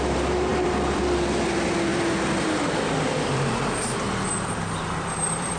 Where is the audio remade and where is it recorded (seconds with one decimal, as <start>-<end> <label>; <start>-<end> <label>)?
0.0-0.5 recorded; 0.5-1.0 remade; 1.0-1.9 recorded; 1.9-5.6 remade